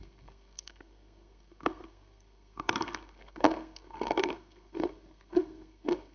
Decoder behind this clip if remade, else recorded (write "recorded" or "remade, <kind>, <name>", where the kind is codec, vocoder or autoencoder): remade, codec, SNAC